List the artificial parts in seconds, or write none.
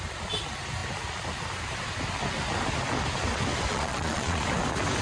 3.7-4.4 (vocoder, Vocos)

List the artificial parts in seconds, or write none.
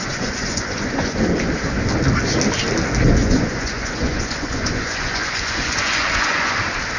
0.0-1.2 (vocoder, Vocos); 3.2-6.6